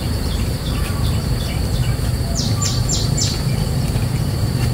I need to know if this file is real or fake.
fake